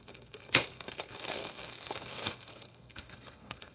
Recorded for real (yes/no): no